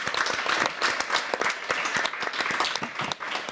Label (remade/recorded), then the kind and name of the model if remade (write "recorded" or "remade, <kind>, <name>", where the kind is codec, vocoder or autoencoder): recorded